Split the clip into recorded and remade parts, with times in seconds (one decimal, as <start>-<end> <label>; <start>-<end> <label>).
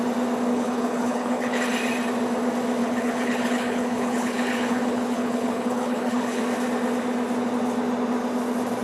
0.0-0.5 recorded; 0.5-1.6 remade; 1.6-2.8 recorded; 2.8-6.4 remade; 6.4-8.8 recorded